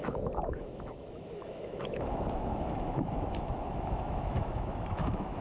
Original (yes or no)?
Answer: no